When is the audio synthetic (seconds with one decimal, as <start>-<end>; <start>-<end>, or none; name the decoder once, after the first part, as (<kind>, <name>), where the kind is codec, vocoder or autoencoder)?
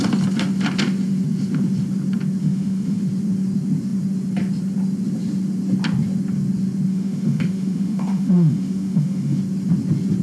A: 2.4-3.0 (autoencoder, DAC-VAE); 6.9-9.4